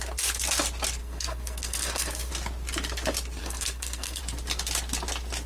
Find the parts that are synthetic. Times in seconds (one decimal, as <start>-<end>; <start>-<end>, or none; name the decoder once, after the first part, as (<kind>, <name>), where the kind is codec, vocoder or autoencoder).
1.0-2.3 (codec, SNAC); 3.4-4.2

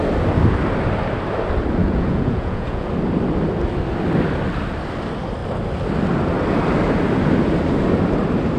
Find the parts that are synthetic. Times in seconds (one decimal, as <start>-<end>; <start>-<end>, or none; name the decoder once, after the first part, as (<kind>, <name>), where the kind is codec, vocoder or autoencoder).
1.8-2.9 (vocoder, Vocos)

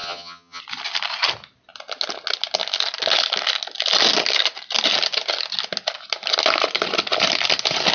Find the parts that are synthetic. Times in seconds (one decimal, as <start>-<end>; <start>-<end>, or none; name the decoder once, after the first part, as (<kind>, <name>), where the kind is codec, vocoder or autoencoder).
0.0-0.6 (vocoder, HiFi-GAN)

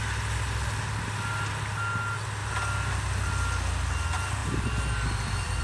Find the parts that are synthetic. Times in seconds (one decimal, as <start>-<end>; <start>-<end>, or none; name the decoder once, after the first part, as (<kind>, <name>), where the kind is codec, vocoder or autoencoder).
4.4-5.6 (vocoder, BigVGAN v2)

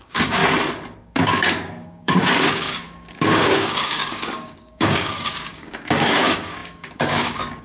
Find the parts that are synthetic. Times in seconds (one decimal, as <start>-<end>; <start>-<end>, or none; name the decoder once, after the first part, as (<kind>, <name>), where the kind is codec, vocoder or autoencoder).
0.0-0.4 (codec, DAC); 1.0-7.6

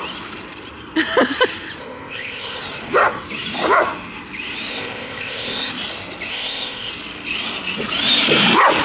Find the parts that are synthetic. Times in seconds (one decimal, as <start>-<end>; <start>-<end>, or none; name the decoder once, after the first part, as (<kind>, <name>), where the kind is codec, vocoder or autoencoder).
1.8-2.6 (codec, ZipCodec); 4.7-5.7; 6.3-6.9

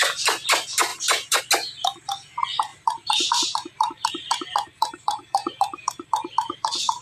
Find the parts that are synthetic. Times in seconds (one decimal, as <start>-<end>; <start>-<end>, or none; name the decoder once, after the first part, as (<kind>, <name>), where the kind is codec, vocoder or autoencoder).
0.9-1.4 (vocoder, BigVGAN v2); 2.7-7.0